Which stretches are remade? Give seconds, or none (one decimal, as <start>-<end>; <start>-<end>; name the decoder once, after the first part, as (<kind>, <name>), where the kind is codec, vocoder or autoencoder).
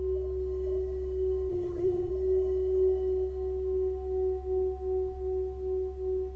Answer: 1.5-2.1 (codec, SNAC)